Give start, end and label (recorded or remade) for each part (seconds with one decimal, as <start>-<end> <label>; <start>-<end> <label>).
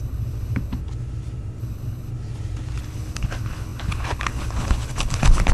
0.0-0.8 remade; 0.8-1.6 recorded; 1.6-2.1 remade; 2.1-2.8 recorded; 2.8-5.5 remade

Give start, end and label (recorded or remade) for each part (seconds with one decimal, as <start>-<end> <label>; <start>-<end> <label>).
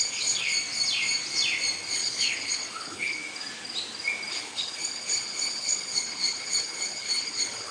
0.0-0.5 remade; 0.5-1.9 recorded; 1.9-3.2 remade; 3.2-4.3 recorded; 4.3-7.7 remade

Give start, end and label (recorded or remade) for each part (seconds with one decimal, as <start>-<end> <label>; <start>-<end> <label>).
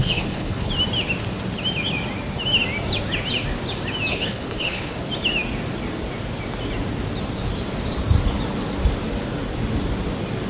0.0-0.7 remade; 0.7-4.1 recorded; 4.1-4.9 remade; 4.9-10.5 recorded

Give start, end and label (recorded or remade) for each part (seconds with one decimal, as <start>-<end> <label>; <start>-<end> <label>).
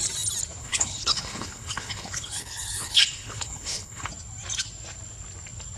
0.0-0.6 recorded; 0.6-4.1 remade; 4.1-5.8 recorded